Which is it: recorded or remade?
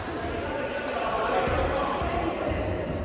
recorded